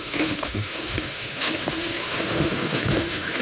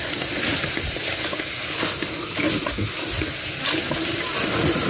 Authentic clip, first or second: second